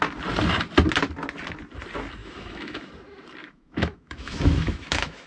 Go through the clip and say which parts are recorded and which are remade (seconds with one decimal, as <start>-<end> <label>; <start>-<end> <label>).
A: 0.0-2.2 recorded; 2.2-2.9 remade; 2.9-3.4 recorded; 3.4-5.3 remade